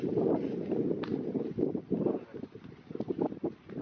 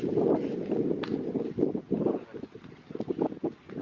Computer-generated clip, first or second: first